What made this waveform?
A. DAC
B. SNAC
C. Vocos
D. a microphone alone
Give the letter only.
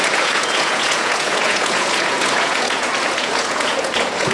C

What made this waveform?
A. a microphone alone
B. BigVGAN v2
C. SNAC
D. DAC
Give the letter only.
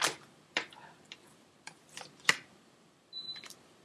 B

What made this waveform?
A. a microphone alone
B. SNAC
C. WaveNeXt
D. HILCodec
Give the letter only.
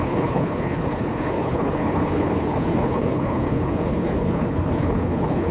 D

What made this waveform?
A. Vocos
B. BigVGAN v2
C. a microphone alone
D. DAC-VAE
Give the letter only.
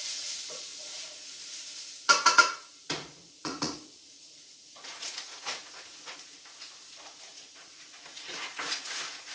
A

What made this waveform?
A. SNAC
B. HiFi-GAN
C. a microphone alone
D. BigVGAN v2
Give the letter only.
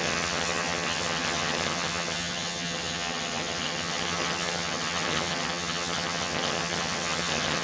B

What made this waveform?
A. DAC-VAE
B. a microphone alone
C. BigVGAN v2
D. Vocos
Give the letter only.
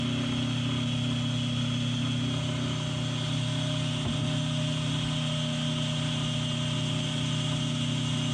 B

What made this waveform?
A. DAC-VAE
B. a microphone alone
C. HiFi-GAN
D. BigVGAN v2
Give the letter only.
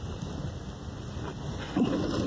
B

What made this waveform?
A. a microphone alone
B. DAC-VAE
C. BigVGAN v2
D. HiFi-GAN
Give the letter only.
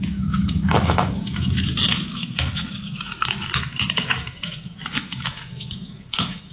B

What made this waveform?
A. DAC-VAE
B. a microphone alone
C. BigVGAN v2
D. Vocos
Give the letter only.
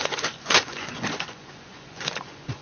D